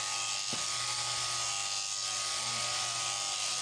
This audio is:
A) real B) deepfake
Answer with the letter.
A